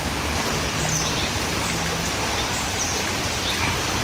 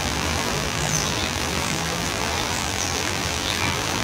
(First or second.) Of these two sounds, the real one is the first